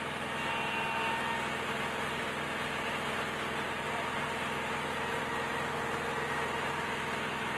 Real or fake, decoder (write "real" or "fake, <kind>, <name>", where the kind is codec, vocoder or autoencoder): real